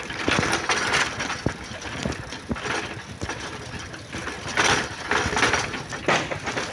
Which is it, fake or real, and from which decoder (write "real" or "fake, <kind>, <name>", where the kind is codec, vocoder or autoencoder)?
real